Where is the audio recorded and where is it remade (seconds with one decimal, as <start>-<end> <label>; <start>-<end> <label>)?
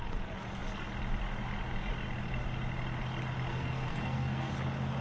0.0-3.5 recorded; 3.5-4.5 remade; 4.5-5.0 recorded